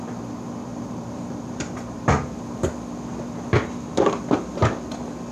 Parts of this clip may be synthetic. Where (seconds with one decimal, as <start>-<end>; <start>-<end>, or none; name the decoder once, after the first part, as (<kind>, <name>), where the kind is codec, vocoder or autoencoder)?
0.7-2.0 (vocoder, BigVGAN v2)